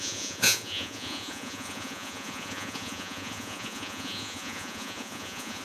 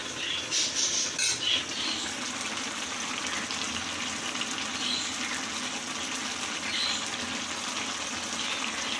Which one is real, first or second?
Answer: second